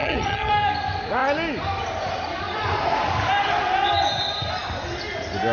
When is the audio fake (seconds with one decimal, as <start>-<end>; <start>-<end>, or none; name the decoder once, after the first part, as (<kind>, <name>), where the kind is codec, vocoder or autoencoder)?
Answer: 0.0-0.5 (vocoder, HiFi-GAN)